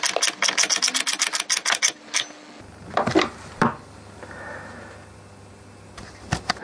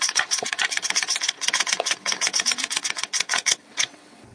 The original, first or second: first